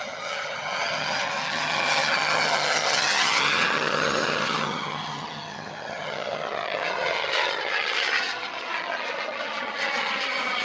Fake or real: fake